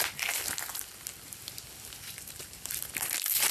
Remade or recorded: remade